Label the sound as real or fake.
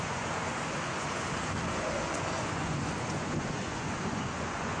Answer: fake